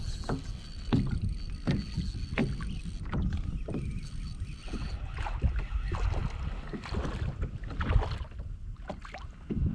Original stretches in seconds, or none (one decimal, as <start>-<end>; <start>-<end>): 0.0-9.7